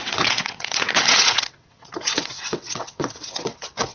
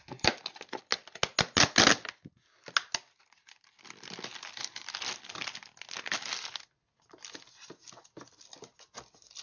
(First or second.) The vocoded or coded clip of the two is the first